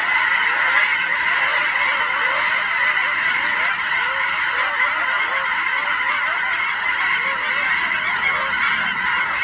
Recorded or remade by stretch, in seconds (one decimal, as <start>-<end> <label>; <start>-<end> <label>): 0.0-1.1 recorded; 1.1-2.2 remade; 2.2-3.1 recorded; 3.1-3.6 remade; 3.6-4.0 recorded; 4.0-7.8 remade; 7.8-9.4 recorded